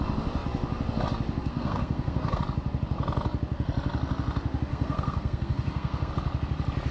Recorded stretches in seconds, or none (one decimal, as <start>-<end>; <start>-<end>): 0.0-1.5; 2.4-4.7; 6.1-6.9